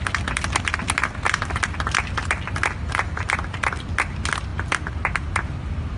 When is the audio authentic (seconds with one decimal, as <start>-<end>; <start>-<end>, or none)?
0.0-6.0